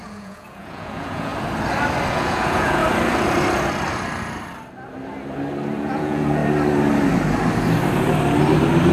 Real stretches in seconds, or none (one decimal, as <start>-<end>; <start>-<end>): 1.3-2.1; 2.8-5.9; 6.4-8.9